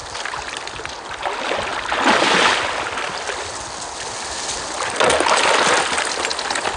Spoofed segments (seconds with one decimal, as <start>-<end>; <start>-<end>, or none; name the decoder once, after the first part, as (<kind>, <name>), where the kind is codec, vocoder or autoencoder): none